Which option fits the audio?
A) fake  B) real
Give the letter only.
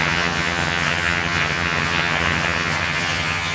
A